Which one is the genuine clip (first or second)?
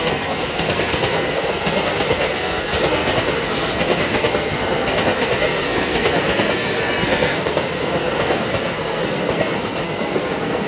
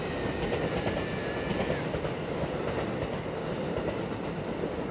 second